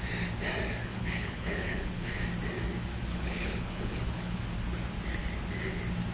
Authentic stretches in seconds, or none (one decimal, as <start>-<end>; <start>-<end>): 0.0-0.8; 2.1-3.1; 4.4-6.1